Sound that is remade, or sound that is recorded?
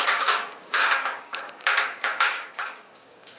remade